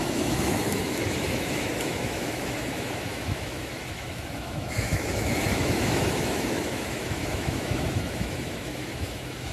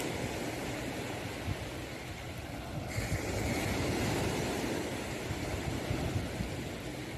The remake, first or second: first